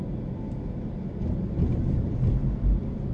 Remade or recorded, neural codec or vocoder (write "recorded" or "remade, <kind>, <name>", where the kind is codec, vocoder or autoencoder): recorded